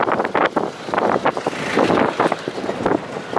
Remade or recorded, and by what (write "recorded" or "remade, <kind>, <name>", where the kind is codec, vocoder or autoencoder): recorded